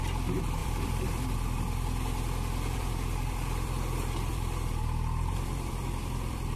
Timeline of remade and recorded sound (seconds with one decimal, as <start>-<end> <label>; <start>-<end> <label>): 0.0-6.6 remade